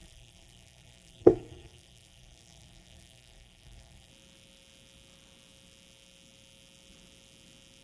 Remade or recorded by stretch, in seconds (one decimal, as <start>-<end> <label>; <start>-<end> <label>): 0.0-4.1 remade; 4.1-7.8 recorded